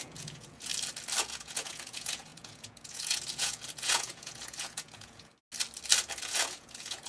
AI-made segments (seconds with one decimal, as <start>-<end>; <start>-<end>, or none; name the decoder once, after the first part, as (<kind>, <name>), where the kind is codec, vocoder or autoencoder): 0.0-0.7 (vocoder, Vocos); 1.2-5.3; 6.0-7.1